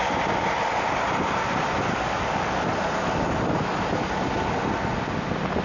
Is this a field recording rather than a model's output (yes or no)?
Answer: yes